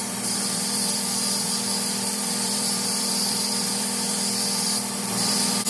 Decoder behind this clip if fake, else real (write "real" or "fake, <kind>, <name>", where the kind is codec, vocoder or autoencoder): fake, vocoder, BigVGAN v2